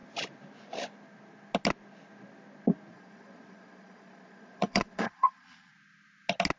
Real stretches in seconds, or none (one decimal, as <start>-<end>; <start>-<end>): 0.0-2.9; 5.7-6.6